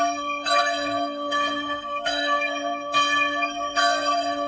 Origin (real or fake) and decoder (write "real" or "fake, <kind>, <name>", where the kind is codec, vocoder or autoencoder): fake, codec, SNAC